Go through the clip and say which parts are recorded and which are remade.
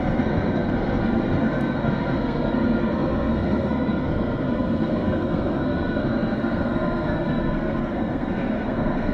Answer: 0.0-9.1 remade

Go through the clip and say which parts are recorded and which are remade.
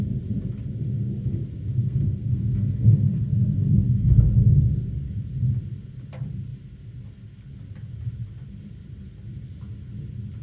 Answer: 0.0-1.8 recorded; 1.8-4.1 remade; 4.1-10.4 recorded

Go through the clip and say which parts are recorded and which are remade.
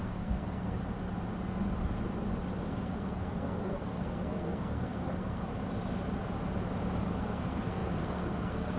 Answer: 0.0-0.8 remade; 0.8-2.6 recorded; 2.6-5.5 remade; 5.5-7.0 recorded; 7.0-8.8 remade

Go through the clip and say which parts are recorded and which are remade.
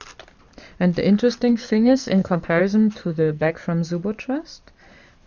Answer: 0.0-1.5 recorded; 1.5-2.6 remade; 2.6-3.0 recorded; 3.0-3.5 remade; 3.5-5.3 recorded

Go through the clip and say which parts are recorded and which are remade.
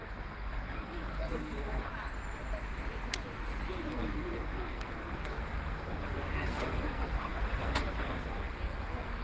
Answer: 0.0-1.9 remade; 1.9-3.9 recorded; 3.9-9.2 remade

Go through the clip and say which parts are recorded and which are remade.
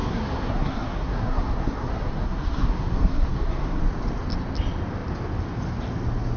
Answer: 0.0-3.8 remade; 3.8-6.4 recorded